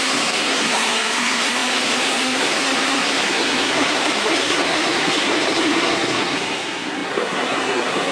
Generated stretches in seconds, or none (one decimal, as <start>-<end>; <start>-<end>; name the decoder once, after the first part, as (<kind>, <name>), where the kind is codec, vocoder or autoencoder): 0.0-8.1 (codec, SNAC)